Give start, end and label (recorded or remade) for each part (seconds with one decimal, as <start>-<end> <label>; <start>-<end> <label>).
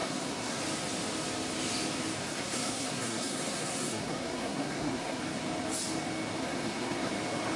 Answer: 0.0-0.6 remade; 0.6-2.2 recorded; 2.2-5.2 remade; 5.2-6.4 recorded; 6.4-7.1 remade; 7.1-7.6 recorded